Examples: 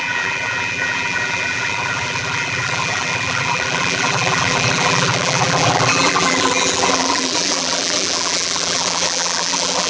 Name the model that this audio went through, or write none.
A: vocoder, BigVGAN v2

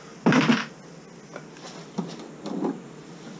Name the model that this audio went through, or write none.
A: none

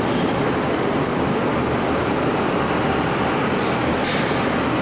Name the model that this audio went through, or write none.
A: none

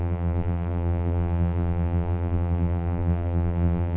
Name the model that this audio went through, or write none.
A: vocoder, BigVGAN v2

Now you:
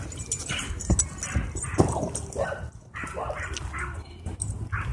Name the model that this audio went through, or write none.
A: none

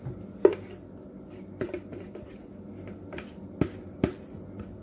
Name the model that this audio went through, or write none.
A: none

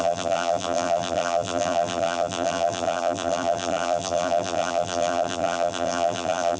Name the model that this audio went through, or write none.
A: vocoder, BigVGAN v2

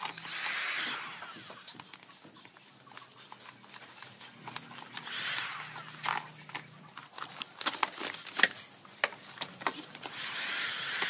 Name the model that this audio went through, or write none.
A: none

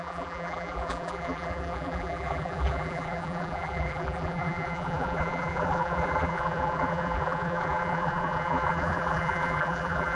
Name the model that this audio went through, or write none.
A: vocoder, BigVGAN v2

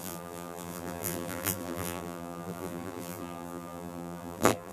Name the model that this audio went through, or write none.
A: vocoder, BigVGAN v2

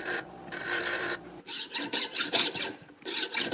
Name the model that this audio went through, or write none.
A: vocoder, BigVGAN v2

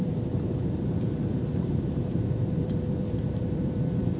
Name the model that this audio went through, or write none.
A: vocoder, BigVGAN v2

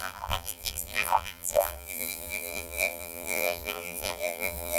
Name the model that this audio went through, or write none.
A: vocoder, BigVGAN v2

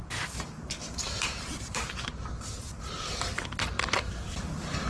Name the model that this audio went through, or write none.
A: vocoder, BigVGAN v2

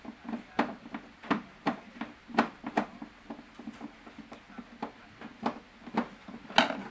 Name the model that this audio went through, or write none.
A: none